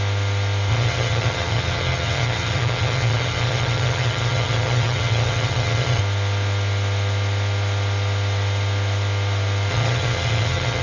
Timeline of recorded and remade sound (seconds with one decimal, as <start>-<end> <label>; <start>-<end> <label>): 0.0-0.7 recorded; 0.7-6.0 remade; 6.0-9.7 recorded; 9.7-10.8 remade